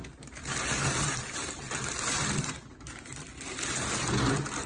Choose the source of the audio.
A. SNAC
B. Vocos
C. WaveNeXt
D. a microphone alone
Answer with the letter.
D